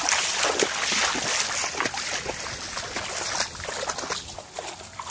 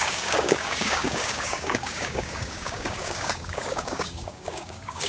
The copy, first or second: second